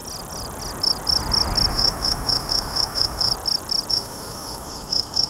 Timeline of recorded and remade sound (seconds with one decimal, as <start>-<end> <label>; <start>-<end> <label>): 0.0-1.7 recorded; 1.7-3.3 remade; 3.3-3.9 recorded; 3.9-5.3 remade